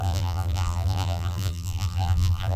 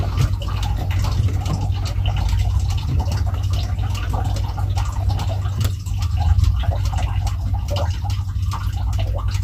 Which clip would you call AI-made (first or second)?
first